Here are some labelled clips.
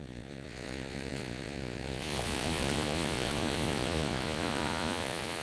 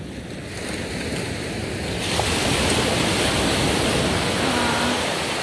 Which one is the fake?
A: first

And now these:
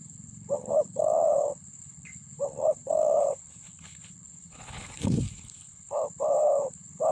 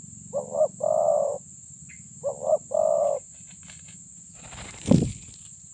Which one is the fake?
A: first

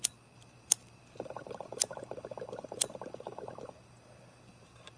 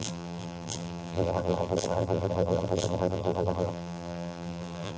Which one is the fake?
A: second